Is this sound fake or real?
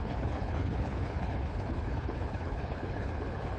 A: fake